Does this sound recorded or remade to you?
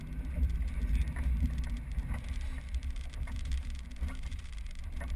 remade